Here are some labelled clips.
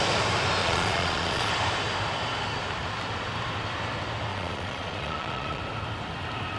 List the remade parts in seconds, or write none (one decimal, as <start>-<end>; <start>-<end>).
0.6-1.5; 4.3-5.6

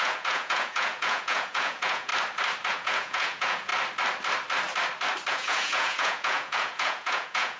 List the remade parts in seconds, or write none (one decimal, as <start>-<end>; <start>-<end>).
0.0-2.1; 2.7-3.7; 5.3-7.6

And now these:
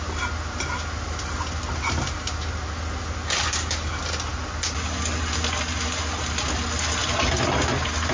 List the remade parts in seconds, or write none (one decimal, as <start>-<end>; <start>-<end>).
none